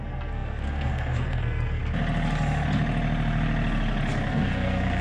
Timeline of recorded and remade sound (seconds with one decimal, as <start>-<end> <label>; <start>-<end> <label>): 0.0-1.8 remade; 1.8-4.3 recorded; 4.3-5.0 remade